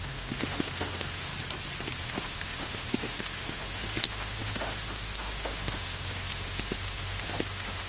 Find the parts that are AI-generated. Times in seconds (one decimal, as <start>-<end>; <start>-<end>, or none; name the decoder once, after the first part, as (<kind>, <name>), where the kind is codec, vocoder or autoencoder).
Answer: 0.0-1.3 (autoencoder, DAC-VAE); 2.0-7.9